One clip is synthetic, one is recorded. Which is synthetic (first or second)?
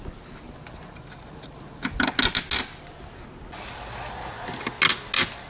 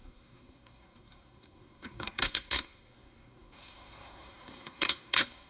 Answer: second